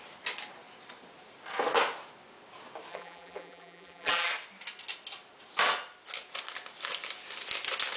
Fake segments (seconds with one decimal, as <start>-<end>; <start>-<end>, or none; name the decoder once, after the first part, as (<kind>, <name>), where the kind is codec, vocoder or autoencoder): 2.9-4.3 (vocoder, BigVGAN v2)

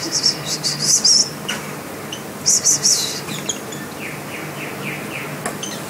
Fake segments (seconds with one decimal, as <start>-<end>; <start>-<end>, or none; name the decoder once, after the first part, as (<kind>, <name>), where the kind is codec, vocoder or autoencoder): 1.2-4.7 (vocoder, BigVGAN v2)

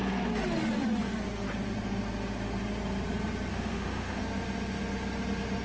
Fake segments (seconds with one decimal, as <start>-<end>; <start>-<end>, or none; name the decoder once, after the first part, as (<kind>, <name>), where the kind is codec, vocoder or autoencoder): 3.5-4.2 (autoencoder, DAC-VAE)

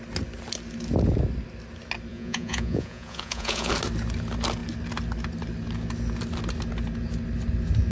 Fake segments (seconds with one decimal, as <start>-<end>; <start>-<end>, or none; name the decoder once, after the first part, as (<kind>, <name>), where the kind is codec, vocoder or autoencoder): 2.1-3.7 (vocoder, Vocos)